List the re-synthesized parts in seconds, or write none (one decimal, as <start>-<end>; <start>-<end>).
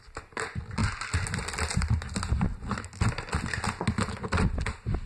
none